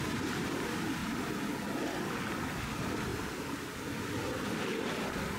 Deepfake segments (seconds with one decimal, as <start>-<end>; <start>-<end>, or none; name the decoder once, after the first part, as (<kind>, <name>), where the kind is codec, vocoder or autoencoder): none